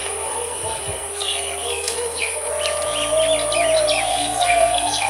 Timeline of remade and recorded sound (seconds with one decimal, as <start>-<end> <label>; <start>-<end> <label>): 0.0-2.5 remade; 2.5-4.1 recorded; 4.1-5.1 remade